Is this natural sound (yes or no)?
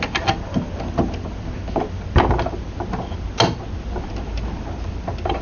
yes